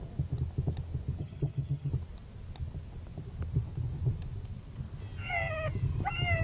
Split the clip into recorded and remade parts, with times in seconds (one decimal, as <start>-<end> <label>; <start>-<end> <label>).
0.0-1.2 recorded; 1.2-1.9 remade; 1.9-6.4 recorded